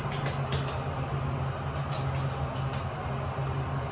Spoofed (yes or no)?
no